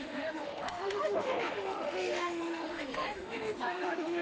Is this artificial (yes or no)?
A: yes